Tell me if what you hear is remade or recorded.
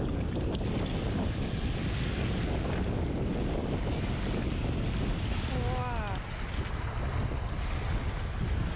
recorded